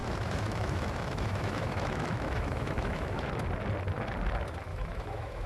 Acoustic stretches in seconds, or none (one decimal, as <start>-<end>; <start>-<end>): 3.3-4.7